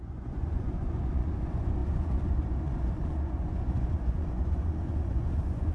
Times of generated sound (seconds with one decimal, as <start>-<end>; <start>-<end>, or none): 0.0-5.7